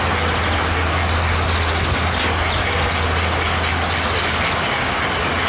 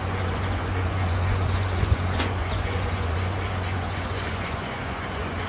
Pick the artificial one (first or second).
second